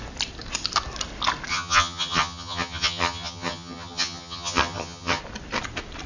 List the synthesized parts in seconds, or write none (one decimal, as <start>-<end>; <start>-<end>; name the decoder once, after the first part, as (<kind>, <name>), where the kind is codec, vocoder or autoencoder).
1.5-5.2 (vocoder, HiFi-GAN)